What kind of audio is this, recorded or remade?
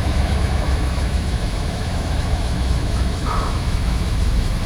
remade